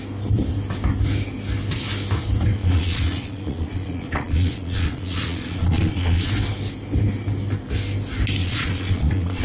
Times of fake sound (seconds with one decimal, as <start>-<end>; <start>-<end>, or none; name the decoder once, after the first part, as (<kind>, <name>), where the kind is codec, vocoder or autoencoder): 2.6-6.3 (vocoder, Vocos); 8.4-9.4